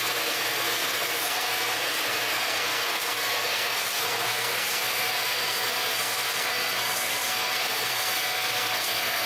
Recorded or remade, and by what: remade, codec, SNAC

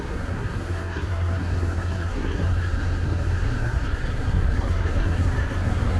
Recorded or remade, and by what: remade, codec, SNAC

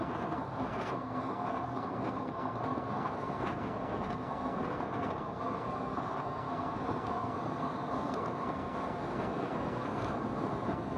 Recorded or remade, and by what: remade, codec, SNAC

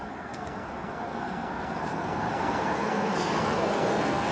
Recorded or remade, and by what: remade, codec, SNAC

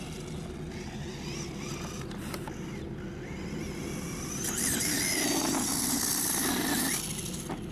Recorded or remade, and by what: recorded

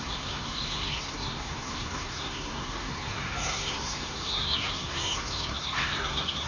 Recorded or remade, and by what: remade, codec, SNAC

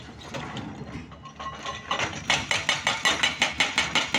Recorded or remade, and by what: recorded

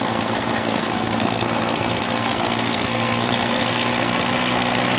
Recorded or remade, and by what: remade, codec, SNAC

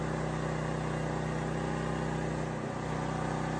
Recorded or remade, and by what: recorded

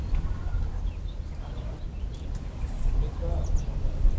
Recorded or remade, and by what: recorded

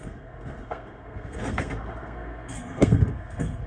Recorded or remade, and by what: remade, codec, SNAC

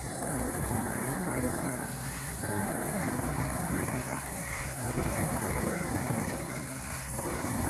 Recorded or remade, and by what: remade, codec, SNAC